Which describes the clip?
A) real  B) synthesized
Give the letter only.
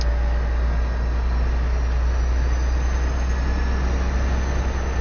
A